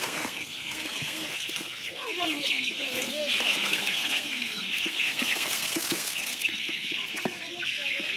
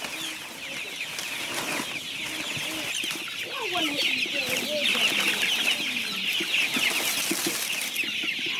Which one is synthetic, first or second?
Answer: first